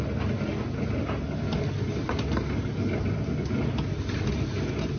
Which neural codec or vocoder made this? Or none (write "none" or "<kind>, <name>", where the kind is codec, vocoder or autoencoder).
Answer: none